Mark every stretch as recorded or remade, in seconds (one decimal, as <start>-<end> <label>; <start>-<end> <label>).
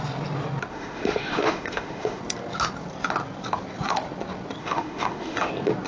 0.0-0.7 recorded; 0.7-2.2 remade; 2.2-4.6 recorded; 4.6-5.5 remade; 5.5-5.9 recorded